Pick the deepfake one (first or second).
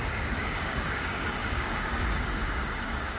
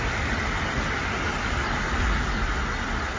first